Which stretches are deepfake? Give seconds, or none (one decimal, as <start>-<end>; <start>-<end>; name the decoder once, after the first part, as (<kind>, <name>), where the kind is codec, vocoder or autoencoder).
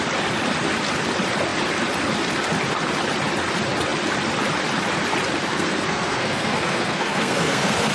5.5-7.9 (codec, SNAC)